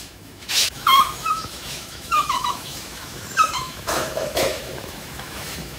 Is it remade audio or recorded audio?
remade